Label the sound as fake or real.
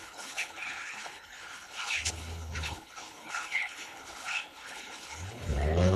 fake